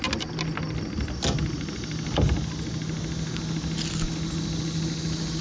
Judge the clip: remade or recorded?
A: recorded